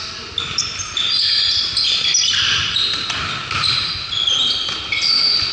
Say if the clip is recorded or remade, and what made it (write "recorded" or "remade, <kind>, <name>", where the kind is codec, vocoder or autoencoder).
recorded